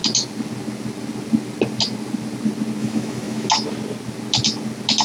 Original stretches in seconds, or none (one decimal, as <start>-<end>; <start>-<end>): 0.0-2.8; 3.5-5.0

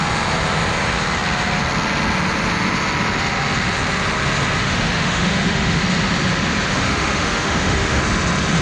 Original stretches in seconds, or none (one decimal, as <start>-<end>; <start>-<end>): 0.0-4.6; 5.8-6.7; 8.0-8.6

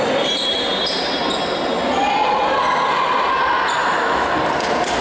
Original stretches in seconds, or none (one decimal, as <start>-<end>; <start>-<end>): 0.0-3.8; 4.3-5.0

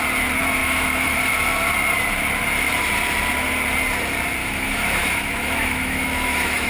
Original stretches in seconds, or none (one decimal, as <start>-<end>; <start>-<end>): 0.0-0.6; 1.2-4.4

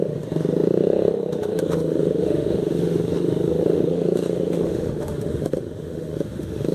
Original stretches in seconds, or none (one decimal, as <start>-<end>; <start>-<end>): none

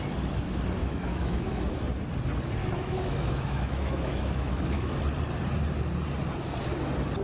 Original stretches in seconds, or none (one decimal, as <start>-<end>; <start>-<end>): 0.0-0.8; 1.7-2.6; 5.0-7.2

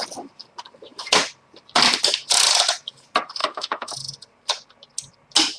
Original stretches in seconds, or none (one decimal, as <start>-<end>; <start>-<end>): 0.0-3.4; 3.9-5.6